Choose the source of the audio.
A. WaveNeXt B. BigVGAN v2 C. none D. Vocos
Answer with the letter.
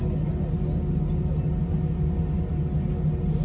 C